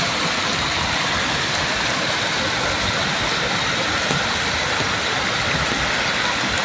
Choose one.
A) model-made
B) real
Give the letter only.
B